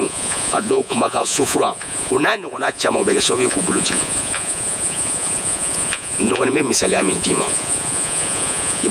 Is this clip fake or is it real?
fake